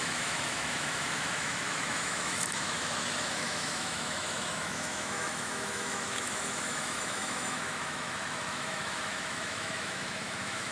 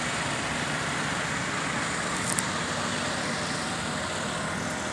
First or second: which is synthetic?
first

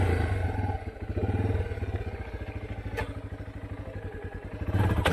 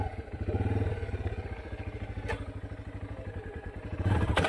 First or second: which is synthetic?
second